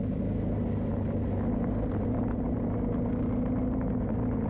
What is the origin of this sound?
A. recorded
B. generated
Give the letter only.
A